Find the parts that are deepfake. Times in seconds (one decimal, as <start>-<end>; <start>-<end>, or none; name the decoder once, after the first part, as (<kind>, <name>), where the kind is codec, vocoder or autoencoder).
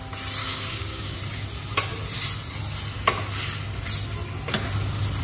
0.4-1.2 (codec, DAC)